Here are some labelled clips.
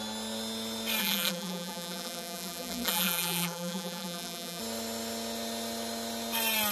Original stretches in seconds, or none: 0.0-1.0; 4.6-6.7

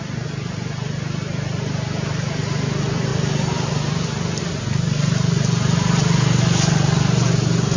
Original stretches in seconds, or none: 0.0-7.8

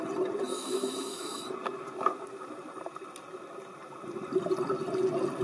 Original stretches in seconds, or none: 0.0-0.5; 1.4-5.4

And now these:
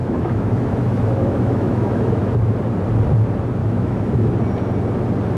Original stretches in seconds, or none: 2.5-3.6; 4.3-5.4